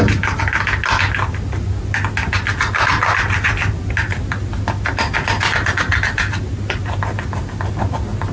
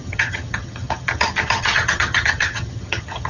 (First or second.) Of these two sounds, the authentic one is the first